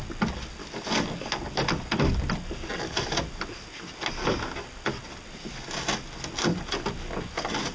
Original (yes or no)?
yes